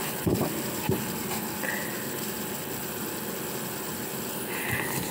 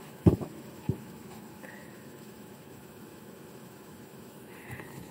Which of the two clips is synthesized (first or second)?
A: second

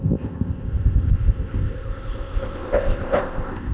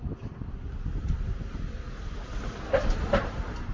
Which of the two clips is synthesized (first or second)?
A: first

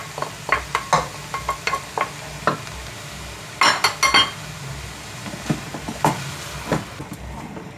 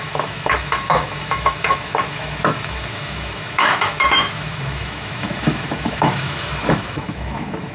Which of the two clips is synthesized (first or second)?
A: second